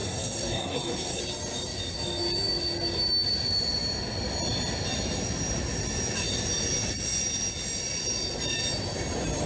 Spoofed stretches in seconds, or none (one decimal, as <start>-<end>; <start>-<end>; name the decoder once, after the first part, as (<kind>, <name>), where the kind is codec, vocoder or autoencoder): 0.0-1.2 (codec, SNAC)